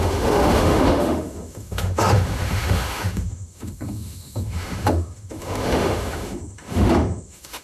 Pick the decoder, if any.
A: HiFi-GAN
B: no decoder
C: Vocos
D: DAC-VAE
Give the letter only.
D